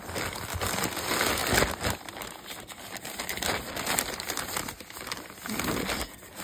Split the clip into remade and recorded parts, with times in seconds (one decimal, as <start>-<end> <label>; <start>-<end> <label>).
0.0-1.4 recorded; 1.4-4.5 remade; 4.5-6.4 recorded